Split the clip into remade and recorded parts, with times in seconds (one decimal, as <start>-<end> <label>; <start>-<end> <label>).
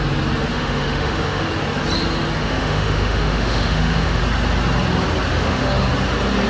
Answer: 0.0-0.5 recorded; 0.5-1.5 remade; 1.5-2.4 recorded; 2.4-4.2 remade; 4.2-5.3 recorded; 5.3-5.9 remade; 5.9-6.5 recorded